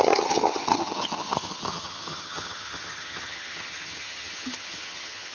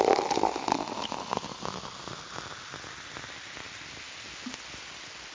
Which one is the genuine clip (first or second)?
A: second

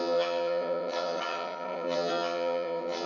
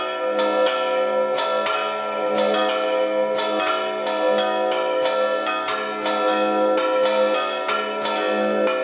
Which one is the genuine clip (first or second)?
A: second